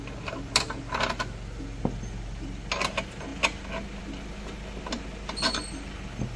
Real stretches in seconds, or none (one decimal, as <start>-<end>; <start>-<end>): 0.0-6.4